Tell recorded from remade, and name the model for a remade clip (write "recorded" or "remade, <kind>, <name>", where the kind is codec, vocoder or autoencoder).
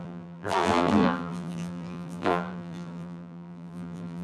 remade, vocoder, BigVGAN v2